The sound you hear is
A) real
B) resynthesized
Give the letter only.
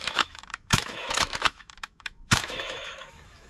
B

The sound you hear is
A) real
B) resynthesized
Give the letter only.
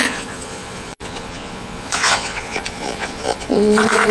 B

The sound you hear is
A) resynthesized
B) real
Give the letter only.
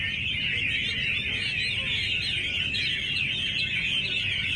B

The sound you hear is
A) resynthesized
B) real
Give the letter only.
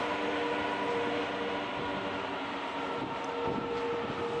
B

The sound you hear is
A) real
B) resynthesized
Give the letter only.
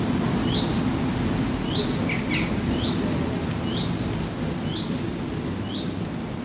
A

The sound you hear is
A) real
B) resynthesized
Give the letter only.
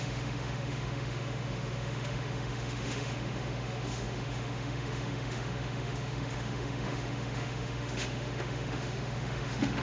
B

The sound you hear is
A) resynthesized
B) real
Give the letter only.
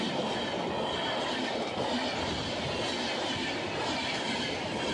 B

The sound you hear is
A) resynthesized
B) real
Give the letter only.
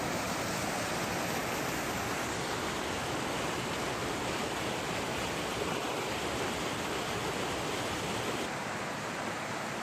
B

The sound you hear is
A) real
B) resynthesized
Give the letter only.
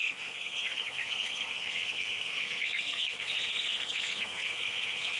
B